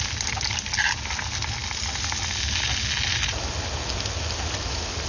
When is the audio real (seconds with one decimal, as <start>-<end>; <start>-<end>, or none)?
0.0-5.1